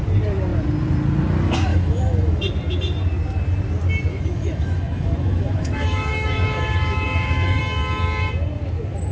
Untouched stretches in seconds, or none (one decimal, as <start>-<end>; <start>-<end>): 0.0-1.7; 2.4-4.1; 7.6-9.1